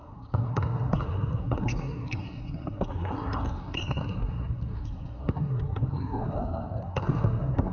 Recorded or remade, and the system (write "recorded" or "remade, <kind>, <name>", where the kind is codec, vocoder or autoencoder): remade, codec, SNAC